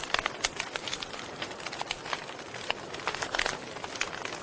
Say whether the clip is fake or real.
real